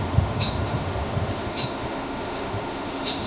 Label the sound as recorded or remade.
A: remade